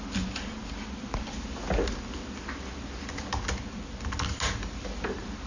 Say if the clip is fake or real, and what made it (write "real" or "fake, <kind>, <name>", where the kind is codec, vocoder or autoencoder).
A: real